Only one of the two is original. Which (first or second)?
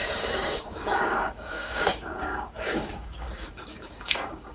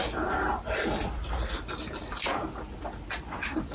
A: second